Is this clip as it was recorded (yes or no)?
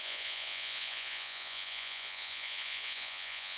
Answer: no